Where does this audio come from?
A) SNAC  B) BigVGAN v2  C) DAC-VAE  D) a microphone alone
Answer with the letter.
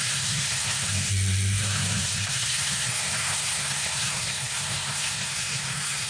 A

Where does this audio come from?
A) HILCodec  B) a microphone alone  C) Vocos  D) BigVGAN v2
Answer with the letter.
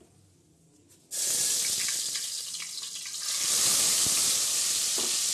B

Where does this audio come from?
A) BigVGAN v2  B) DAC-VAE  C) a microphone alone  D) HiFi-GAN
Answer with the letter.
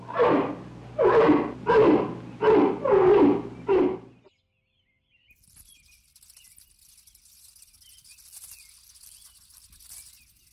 C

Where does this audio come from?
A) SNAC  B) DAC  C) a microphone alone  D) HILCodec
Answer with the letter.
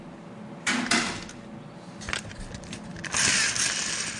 C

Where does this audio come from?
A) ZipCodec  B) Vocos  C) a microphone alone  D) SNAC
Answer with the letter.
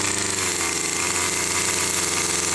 C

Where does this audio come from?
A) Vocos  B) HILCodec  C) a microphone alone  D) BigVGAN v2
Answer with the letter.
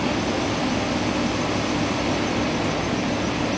C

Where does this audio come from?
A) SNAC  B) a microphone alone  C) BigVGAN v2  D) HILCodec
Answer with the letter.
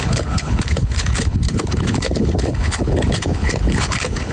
D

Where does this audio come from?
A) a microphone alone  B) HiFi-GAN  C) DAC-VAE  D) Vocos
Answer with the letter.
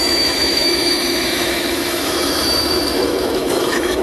C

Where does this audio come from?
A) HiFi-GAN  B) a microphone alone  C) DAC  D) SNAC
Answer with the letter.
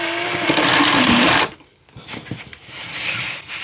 B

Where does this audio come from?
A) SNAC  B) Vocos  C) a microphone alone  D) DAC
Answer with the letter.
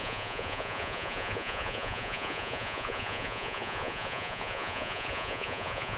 B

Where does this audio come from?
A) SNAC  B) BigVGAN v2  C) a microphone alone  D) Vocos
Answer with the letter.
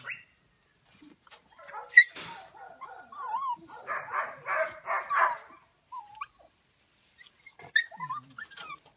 C